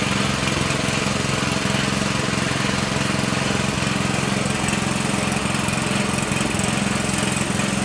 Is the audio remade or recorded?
recorded